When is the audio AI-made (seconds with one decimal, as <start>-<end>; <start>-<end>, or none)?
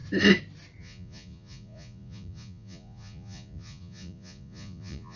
0.8-5.2